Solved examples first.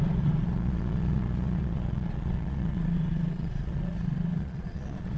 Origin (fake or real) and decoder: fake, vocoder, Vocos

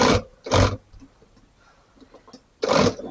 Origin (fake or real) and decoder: real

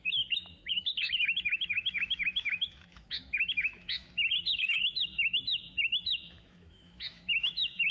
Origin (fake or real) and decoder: fake, autoencoder, DAC-VAE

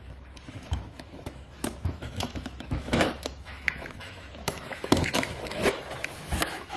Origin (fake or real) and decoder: fake, autoencoder, DAC-VAE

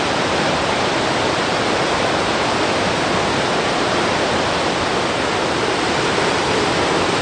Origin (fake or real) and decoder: real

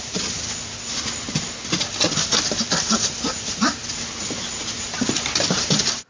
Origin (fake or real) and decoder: real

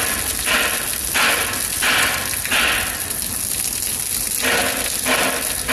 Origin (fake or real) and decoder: real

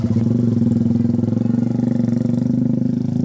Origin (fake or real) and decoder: real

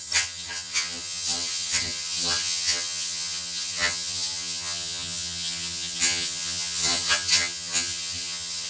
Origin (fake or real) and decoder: fake, vocoder, HiFi-GAN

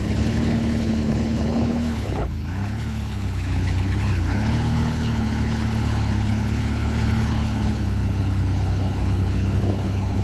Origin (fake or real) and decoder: fake, codec, HILCodec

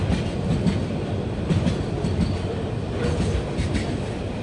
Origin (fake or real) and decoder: real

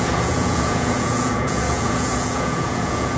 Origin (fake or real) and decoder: fake, vocoder, Vocos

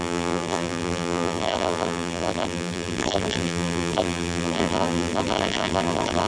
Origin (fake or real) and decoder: fake, vocoder, BigVGAN v2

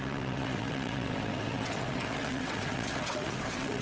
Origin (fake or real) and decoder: fake, vocoder, WaveNeXt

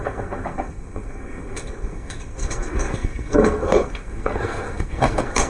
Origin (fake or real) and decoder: fake, codec, SNAC